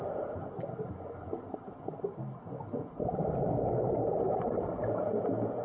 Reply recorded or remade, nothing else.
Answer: recorded